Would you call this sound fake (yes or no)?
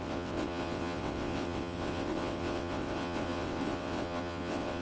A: yes